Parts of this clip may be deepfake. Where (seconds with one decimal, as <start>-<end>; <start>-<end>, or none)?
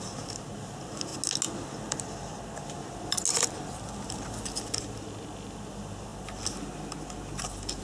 none